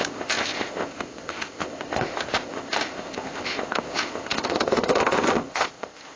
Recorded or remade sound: remade